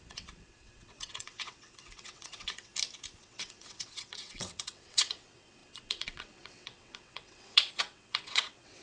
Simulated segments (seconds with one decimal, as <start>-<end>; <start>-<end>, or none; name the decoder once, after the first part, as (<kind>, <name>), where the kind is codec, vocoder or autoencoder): 0.0-2.7 (vocoder, WaveNeXt); 3.2-8.8